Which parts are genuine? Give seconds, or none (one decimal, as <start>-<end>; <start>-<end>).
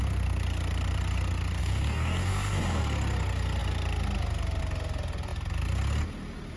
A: 0.0-1.6; 2.8-6.6